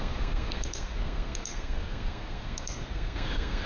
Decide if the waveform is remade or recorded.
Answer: remade